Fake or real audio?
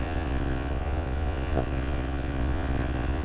fake